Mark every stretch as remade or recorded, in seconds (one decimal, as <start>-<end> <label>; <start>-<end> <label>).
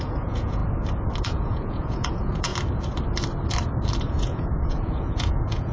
0.0-0.6 remade; 0.6-1.2 recorded; 1.2-2.5 remade; 2.5-4.0 recorded; 4.0-5.7 remade